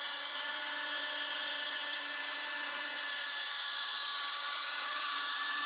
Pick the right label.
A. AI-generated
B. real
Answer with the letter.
A